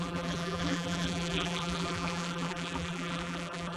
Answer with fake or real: fake